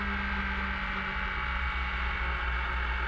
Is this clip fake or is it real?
real